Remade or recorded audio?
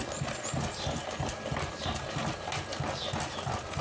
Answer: recorded